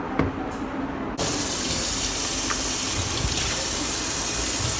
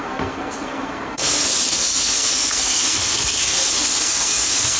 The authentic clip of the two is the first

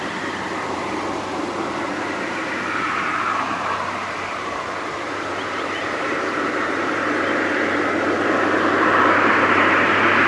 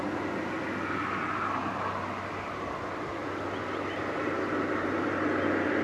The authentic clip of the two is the second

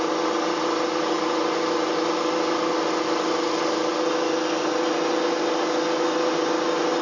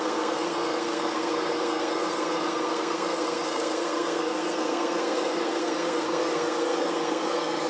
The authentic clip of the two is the first